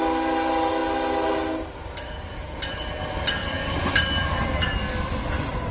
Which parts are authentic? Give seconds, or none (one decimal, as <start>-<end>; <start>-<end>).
0.0-5.7